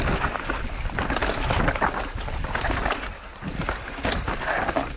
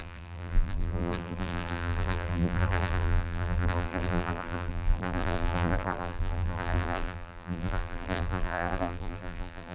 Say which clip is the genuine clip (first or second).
first